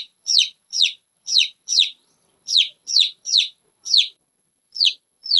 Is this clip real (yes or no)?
no